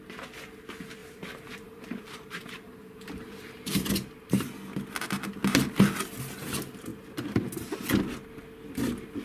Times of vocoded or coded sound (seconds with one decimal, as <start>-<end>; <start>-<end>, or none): 1.0-3.9; 6.9-7.5